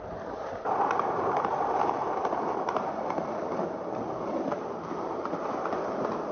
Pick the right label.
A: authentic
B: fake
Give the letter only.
B